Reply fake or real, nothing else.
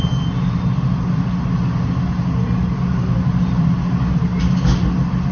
real